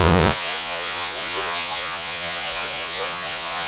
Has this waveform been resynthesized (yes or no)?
yes